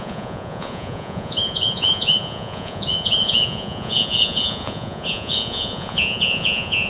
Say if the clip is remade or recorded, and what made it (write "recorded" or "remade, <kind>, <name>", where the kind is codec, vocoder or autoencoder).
remade, vocoder, Vocos